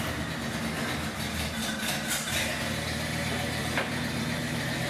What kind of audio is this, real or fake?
real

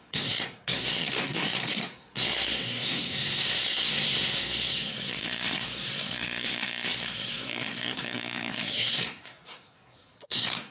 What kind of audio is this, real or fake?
fake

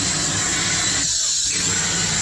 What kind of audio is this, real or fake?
real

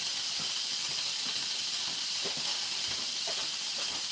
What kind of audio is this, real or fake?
real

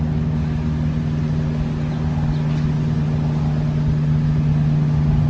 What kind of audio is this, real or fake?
real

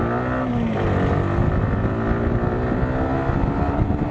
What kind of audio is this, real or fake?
real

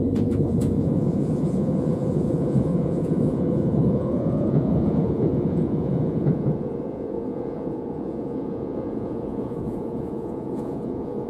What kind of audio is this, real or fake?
fake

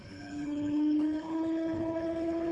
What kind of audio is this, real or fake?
fake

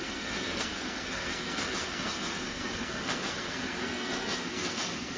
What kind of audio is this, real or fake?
fake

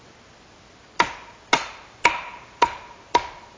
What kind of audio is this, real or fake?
real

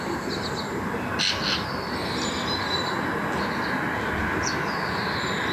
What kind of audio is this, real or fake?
real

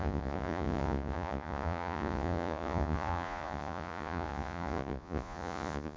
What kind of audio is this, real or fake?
fake